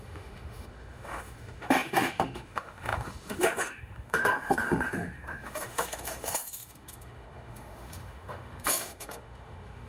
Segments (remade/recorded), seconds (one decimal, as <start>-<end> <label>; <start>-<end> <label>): 0.0-9.9 remade